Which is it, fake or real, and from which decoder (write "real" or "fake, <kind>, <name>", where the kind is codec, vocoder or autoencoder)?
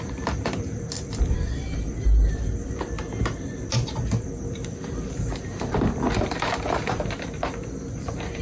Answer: fake, vocoder, BigVGAN v2